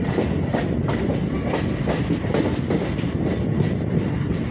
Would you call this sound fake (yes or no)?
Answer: no